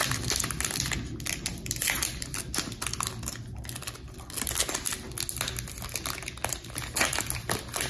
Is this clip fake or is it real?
real